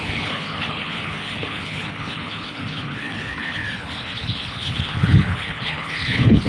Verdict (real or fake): fake